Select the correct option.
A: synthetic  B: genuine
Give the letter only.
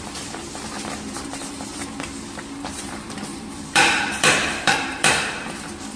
A